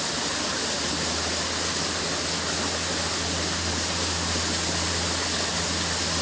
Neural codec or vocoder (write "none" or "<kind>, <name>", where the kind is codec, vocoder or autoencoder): none